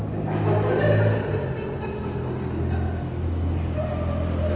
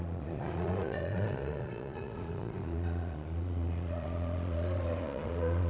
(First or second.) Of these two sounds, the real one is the first